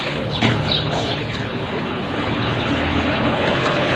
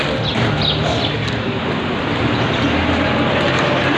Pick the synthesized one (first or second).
first